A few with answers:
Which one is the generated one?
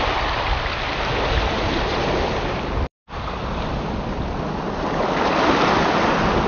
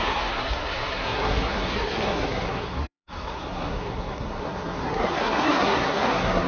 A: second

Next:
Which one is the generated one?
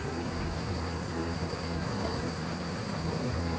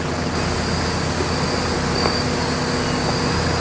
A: first